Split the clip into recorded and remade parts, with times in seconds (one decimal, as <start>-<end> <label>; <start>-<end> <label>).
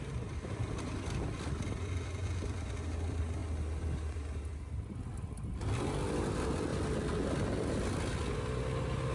0.0-9.1 recorded